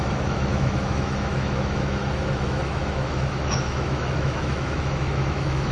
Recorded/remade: remade